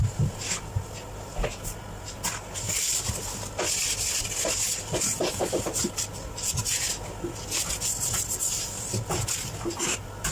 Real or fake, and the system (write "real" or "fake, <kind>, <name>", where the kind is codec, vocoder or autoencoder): real